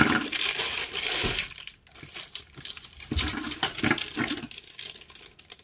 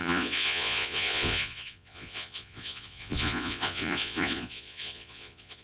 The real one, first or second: first